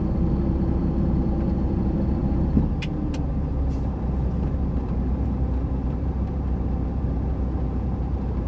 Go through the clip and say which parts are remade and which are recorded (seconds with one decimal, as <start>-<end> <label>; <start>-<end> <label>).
0.0-8.5 remade